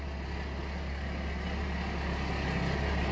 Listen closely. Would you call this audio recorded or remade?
recorded